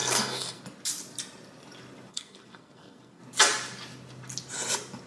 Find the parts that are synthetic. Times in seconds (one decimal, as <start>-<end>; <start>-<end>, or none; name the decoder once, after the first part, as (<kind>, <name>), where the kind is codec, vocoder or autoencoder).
0.0-0.6 (codec, SNAC); 2.1-3.2